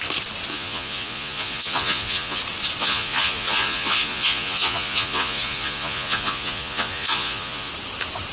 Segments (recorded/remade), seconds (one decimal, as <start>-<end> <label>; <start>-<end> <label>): 0.0-0.5 recorded; 0.5-2.4 remade; 2.4-2.8 recorded; 2.8-7.7 remade; 7.7-8.3 recorded